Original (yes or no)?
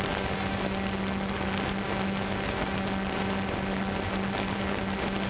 yes